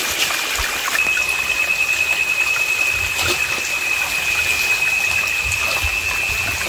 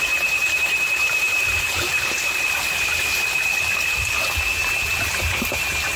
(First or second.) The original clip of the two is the first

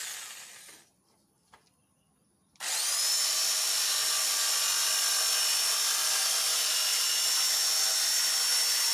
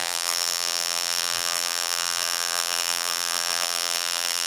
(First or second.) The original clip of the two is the first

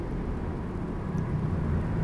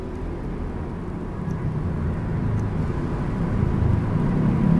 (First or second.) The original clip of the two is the second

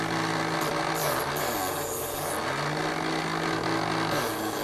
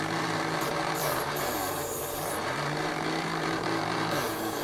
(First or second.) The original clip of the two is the first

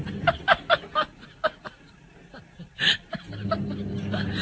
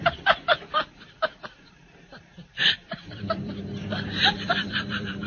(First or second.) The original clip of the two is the first